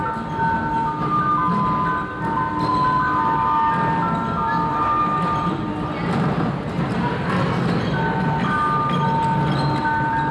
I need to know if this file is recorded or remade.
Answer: recorded